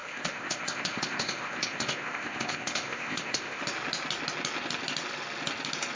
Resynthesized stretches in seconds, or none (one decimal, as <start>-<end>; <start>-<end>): 0.0-3.6